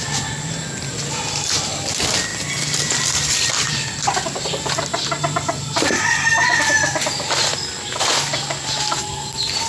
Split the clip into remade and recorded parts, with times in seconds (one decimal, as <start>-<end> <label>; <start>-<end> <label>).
0.0-2.3 recorded; 2.3-4.1 remade; 4.1-4.9 recorded; 4.9-7.0 remade; 7.0-9.7 recorded